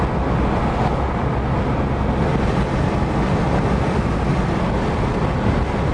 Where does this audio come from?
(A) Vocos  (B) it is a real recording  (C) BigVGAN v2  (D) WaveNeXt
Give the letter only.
B